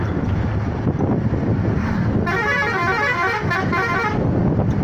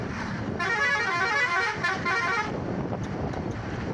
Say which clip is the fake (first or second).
second